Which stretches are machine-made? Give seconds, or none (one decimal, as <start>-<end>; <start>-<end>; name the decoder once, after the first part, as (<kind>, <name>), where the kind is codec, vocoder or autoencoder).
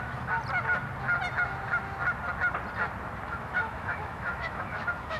0.0-0.4 (autoencoder, DAC-VAE); 3.3-5.2